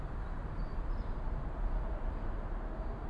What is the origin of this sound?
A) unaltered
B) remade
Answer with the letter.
A